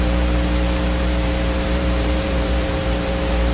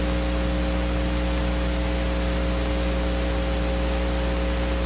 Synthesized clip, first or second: first